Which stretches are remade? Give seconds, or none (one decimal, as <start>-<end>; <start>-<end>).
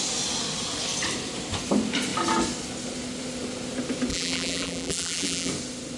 4.1-5.5